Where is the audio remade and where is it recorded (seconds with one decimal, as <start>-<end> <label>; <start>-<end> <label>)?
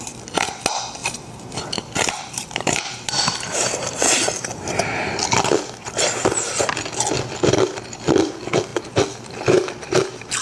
0.0-1.0 recorded; 1.0-5.1 remade; 5.1-10.4 recorded